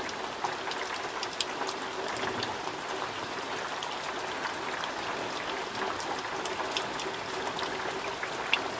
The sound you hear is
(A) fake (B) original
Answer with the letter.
B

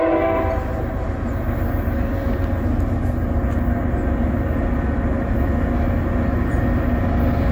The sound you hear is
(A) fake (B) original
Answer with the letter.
B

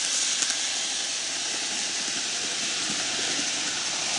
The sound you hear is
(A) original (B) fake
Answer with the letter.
A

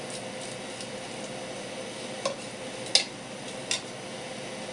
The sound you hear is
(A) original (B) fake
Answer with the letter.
A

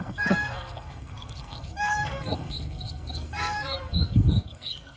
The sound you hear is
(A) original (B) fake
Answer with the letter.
B